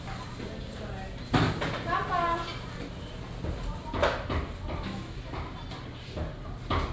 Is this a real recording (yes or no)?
yes